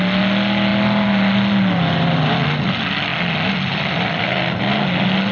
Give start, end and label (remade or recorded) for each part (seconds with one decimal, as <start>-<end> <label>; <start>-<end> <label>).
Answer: 0.0-5.3 recorded